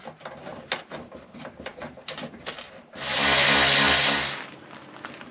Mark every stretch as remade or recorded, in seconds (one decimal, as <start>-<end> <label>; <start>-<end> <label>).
0.0-5.3 recorded

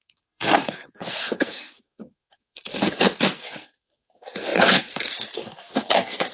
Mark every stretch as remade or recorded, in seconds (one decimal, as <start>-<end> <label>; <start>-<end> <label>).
0.0-6.3 remade

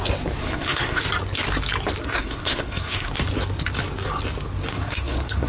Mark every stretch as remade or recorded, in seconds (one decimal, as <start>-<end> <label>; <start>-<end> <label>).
0.0-0.4 recorded; 0.4-1.0 remade; 1.0-2.0 recorded; 2.0-3.1 remade; 3.1-4.7 recorded; 4.7-5.5 remade